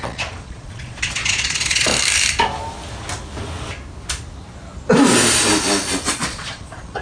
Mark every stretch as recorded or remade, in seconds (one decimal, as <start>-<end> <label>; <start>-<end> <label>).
0.0-1.9 remade; 1.9-6.1 recorded; 6.1-7.0 remade